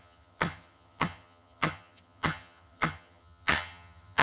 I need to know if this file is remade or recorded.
remade